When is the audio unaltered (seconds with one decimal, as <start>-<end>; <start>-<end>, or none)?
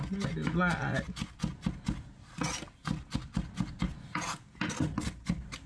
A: 0.0-5.7